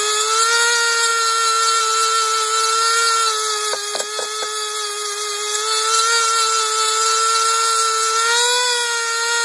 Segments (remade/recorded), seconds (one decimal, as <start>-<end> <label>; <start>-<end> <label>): 0.0-9.4 recorded